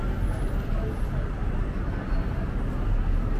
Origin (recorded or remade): recorded